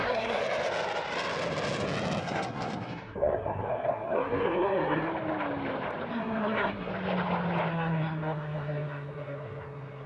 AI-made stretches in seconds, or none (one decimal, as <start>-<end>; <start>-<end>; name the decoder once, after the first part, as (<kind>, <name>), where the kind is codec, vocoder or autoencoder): 0.0-0.4 (codec, SNAC); 2.2-5.1; 6.1-6.9; 7.7-10.1